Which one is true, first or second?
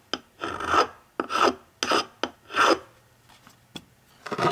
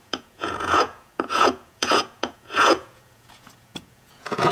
first